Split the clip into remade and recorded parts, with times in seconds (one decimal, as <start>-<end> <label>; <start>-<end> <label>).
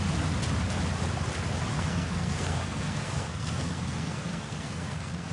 0.0-1.7 recorded; 1.7-5.3 remade